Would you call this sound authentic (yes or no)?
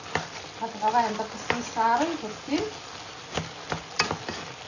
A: yes